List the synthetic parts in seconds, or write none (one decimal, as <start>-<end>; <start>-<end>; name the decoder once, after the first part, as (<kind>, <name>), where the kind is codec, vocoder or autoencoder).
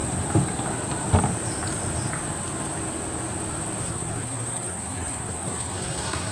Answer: 3.8-6.3 (codec, SNAC)